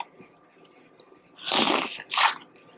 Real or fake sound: real